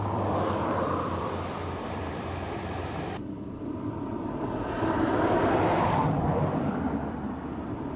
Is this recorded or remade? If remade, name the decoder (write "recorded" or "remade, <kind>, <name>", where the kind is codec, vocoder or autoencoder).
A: remade, vocoder, BigVGAN v2